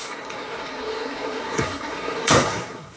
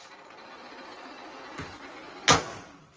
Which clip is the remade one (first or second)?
first